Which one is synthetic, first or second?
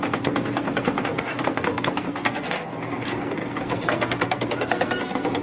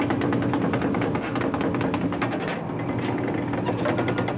first